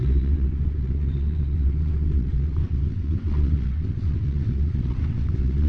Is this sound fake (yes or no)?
yes